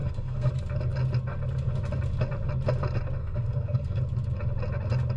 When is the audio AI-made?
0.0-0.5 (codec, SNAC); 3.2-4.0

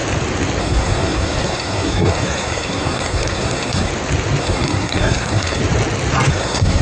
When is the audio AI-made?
0.6-3.9 (codec, SNAC); 4.4-5.6; 6.3-6.8

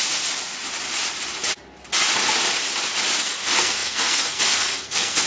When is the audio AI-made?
3.2-5.3 (codec, SNAC)

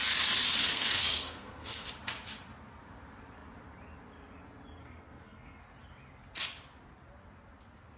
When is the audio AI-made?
0.6-1.9 (codec, SNAC); 4.8-5.6

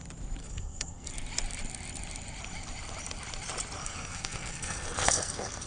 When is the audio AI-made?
0.4-1.1 (codec, SNAC); 3.8-5.7

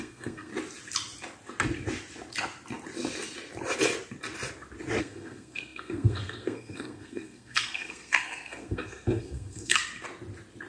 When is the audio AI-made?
0.0-0.5 (codec, SNAC); 5.0-9.8